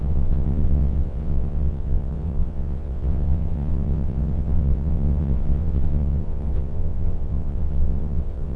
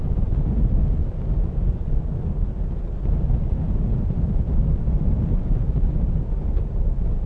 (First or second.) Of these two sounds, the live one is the second